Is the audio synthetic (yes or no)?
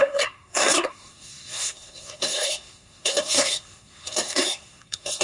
yes